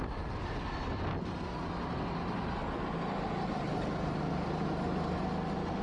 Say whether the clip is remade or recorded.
recorded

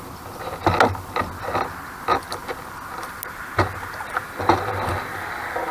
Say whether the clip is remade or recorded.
recorded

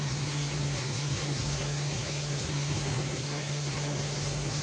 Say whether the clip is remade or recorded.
remade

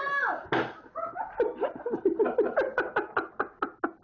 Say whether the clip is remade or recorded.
recorded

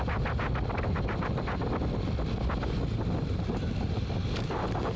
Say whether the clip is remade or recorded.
recorded